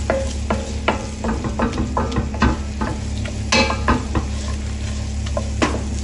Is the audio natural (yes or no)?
yes